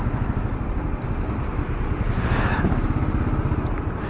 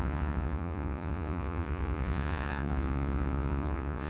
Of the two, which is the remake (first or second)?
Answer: second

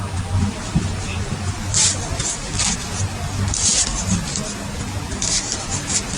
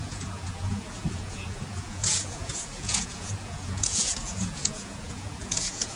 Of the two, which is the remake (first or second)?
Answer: second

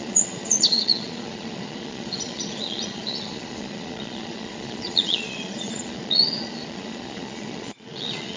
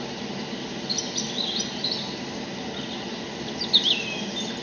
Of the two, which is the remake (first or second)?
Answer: first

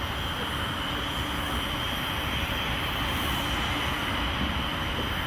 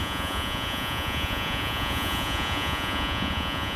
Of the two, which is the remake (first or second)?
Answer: second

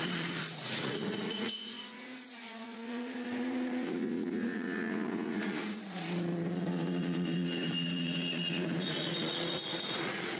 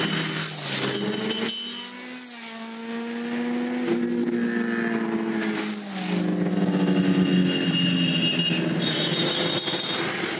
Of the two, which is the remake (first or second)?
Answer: first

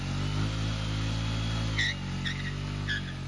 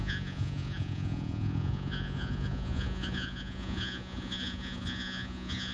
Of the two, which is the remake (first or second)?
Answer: second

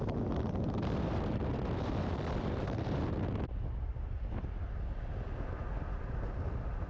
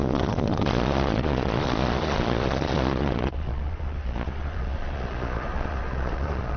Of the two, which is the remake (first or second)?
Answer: second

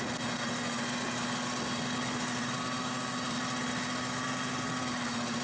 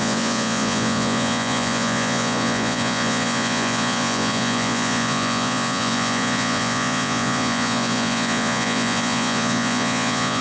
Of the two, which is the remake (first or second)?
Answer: second